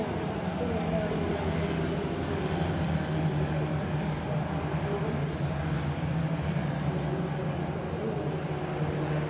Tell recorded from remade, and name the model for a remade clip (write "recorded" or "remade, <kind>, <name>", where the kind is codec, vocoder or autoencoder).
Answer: recorded